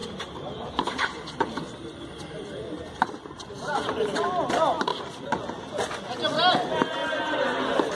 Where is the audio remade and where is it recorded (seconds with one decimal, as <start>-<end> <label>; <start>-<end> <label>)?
0.0-3.1 remade; 3.1-7.0 recorded; 7.0-7.9 remade